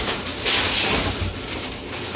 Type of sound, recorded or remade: recorded